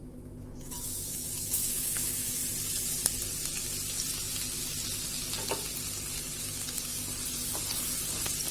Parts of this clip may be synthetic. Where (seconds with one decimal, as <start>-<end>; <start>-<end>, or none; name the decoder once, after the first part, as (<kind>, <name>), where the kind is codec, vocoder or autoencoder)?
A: 0.0-2.4 (autoencoder, DAC-VAE); 6.4-6.9